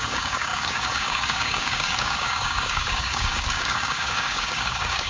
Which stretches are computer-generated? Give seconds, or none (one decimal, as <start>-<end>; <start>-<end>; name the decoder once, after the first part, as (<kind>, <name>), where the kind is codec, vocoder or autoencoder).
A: 0.0-5.1 (codec, DAC)

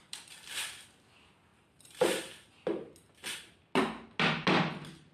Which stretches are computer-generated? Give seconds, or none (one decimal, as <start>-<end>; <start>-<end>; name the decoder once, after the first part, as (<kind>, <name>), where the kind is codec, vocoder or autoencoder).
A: 1.5-2.2 (vocoder, BigVGAN v2)